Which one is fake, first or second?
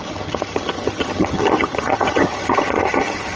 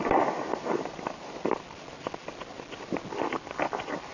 first